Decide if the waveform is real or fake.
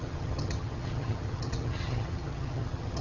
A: fake